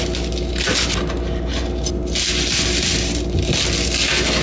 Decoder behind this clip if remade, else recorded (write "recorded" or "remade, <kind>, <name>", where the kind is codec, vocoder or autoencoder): recorded